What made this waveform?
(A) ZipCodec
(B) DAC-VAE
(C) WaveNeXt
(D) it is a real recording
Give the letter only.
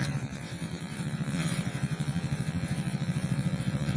C